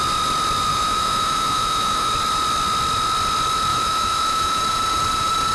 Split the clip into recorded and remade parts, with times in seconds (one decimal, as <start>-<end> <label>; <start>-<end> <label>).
0.0-0.7 recorded; 0.7-2.1 remade; 2.1-3.7 recorded; 3.7-4.6 remade; 4.6-5.5 recorded